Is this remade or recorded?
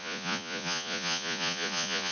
remade